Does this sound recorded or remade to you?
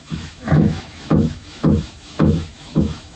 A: remade